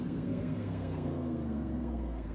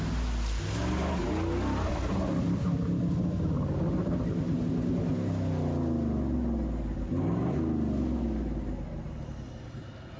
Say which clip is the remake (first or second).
first